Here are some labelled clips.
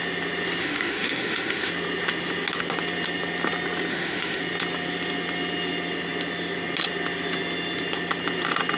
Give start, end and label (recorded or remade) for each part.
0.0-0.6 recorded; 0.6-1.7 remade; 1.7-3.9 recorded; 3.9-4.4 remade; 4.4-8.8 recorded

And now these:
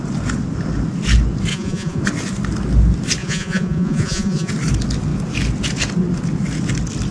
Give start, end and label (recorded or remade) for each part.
0.0-1.5 recorded; 1.5-2.0 remade; 2.0-3.2 recorded; 3.2-4.5 remade; 4.5-7.1 recorded

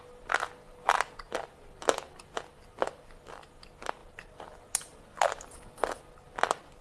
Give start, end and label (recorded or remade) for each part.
0.0-6.8 recorded

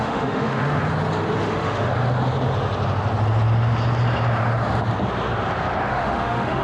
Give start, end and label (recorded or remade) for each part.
0.0-0.8 remade; 0.8-1.4 recorded; 1.4-1.9 remade; 1.9-5.9 recorded; 5.9-6.6 remade

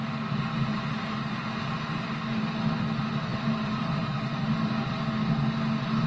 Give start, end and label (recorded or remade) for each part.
0.0-0.7 recorded; 0.7-1.4 remade; 1.4-3.3 recorded; 3.3-4.4 remade; 4.4-6.1 recorded

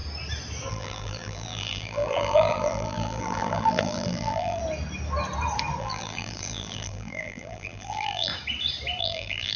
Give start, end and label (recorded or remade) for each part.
0.0-0.7 recorded; 0.7-4.6 remade; 4.6-5.8 recorded; 5.8-8.3 remade; 8.3-9.0 recorded; 9.0-9.6 remade

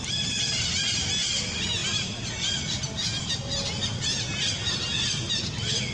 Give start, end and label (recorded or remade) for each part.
0.0-5.9 recorded

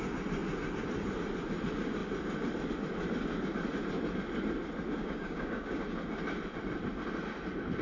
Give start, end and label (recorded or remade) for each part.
0.0-5.0 recorded; 5.0-5.8 remade; 5.8-7.8 recorded